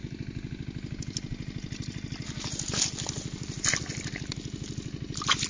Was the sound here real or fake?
real